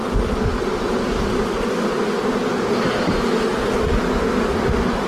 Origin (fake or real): real